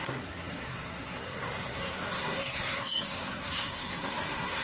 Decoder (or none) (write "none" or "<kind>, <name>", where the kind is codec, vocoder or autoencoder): codec, SNAC